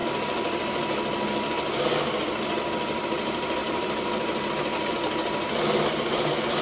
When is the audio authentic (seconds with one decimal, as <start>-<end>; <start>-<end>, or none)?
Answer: 0.0-3.6; 4.5-6.6